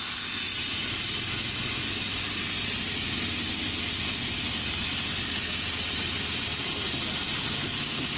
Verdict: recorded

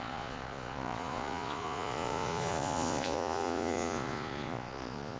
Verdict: remade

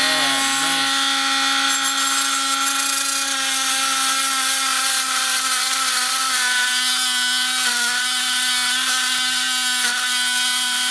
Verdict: recorded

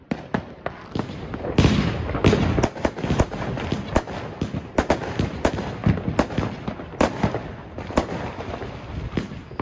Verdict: recorded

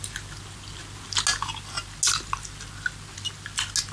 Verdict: recorded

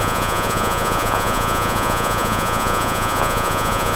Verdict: remade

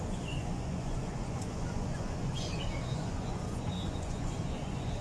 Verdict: remade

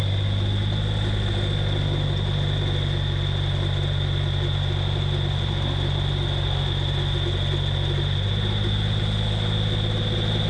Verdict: recorded